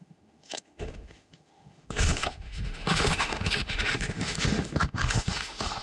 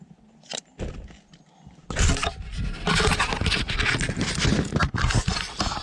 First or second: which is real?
second